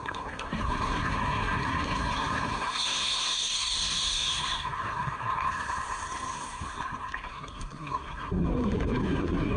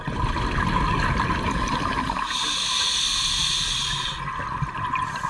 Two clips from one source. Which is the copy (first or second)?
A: first